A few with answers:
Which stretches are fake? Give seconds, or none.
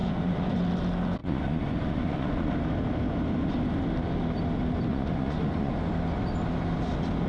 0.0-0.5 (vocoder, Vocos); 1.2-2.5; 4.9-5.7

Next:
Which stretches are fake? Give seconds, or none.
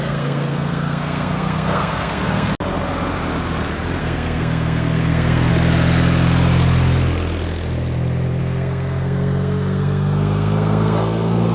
0.0-2.5 (codec, SNAC); 4.0-5.5; 8.4-11.5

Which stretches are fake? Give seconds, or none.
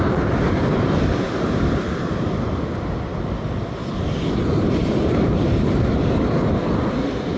4.8-6.5 (vocoder, BigVGAN v2)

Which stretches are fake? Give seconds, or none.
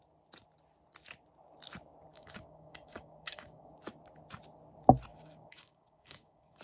2.1-3.7 (codec, DAC); 5.1-6.6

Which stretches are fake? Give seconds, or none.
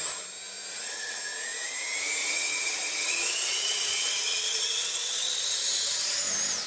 0.7-1.2 (vocoder, WaveNeXt); 2.2-6.2